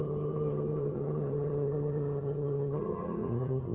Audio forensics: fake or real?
fake